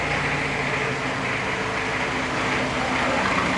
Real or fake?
real